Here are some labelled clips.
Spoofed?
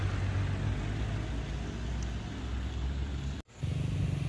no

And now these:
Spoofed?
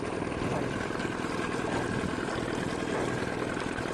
no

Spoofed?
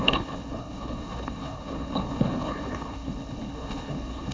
yes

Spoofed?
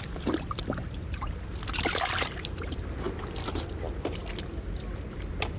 yes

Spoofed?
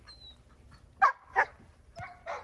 no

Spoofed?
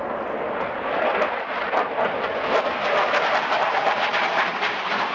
no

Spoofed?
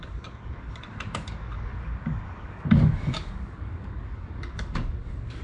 yes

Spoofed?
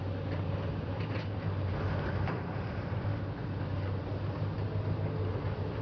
no